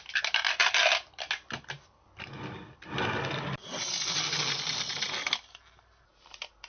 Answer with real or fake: real